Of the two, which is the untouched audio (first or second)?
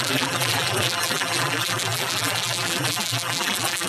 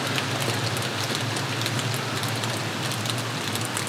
second